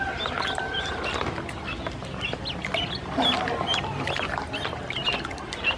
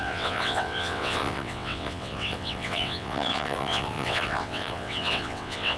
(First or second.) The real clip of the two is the first